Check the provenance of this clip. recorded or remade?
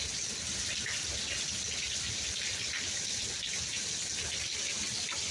recorded